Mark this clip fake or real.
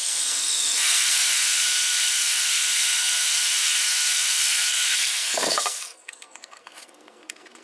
fake